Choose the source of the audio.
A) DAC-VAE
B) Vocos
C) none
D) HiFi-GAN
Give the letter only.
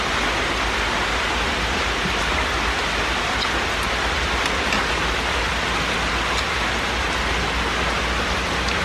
C